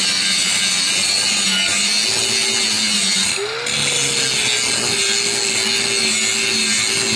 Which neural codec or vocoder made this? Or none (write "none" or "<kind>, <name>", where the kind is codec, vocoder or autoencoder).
none